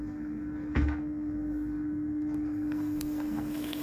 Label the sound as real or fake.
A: fake